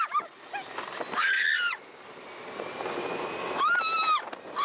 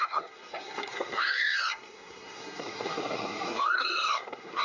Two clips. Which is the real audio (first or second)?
first